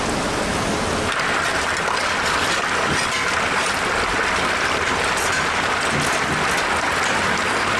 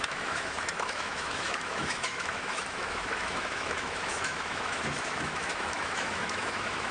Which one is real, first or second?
first